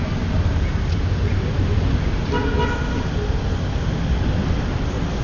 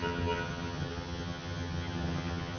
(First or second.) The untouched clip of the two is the first